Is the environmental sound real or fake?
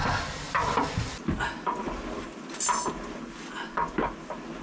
real